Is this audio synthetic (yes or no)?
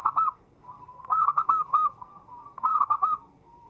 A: yes